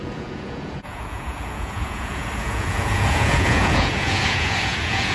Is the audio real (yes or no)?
no